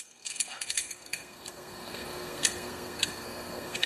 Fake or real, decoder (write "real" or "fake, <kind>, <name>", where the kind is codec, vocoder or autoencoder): fake, codec, SNAC